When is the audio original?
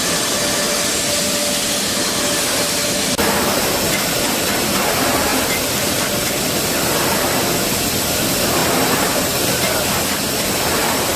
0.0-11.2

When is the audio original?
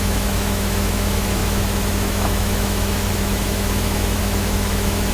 none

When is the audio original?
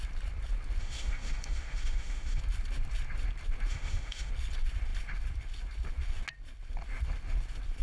0.0-0.8; 2.4-3.7; 4.3-7.8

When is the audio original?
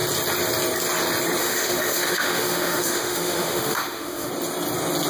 0.0-1.4; 4.3-5.1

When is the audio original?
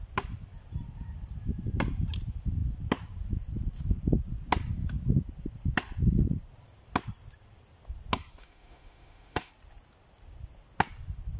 0.0-8.4; 9.5-11.4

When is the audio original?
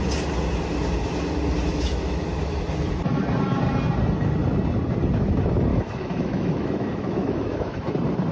0.0-1.7; 2.3-5.7; 7.9-8.3